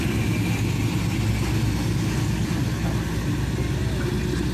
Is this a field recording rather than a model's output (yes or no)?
yes